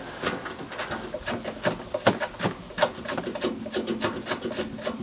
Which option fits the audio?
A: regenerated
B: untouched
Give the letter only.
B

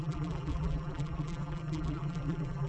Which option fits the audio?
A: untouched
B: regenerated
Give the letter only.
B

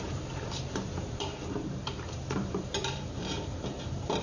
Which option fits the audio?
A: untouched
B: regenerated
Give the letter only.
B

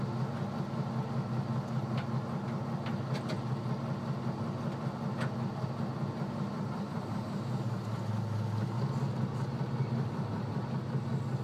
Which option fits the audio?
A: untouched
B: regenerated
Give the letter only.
A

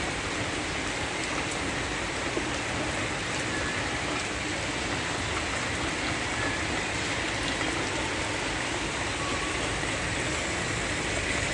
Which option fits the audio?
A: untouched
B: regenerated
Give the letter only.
A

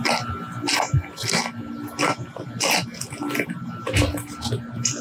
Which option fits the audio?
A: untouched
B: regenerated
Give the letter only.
A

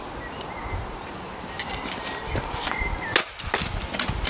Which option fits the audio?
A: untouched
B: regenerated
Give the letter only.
A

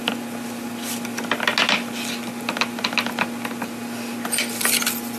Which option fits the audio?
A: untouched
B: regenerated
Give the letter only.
A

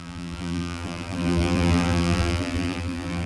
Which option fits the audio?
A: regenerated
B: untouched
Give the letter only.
A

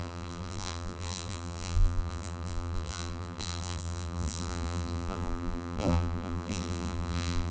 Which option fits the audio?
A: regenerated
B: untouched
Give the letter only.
A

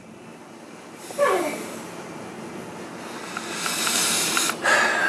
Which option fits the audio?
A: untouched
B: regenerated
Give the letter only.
B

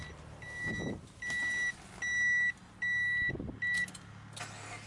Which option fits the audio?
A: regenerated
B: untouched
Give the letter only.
B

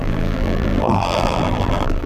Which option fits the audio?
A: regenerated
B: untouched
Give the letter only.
A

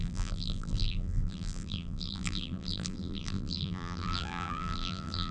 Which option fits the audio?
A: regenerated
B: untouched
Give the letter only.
A